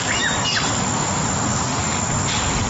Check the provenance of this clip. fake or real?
real